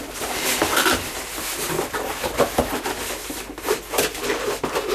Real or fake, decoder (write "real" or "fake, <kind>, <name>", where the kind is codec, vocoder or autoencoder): fake, vocoder, BigVGAN v2